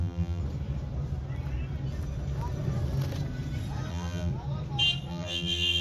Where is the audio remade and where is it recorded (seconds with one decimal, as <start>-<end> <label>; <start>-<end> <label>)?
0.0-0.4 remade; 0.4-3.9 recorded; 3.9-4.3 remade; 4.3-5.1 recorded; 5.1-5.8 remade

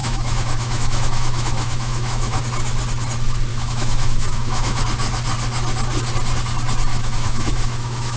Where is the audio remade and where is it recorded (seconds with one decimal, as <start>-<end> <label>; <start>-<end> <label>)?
0.0-2.4 remade; 2.4-3.5 recorded; 3.5-4.8 remade; 4.8-6.9 recorded; 6.9-8.2 remade

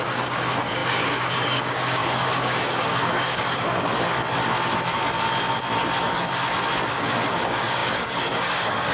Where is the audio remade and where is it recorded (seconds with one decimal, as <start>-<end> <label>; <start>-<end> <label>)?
0.0-3.9 remade; 3.9-6.9 recorded; 6.9-8.9 remade